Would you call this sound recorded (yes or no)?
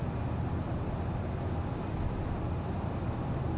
yes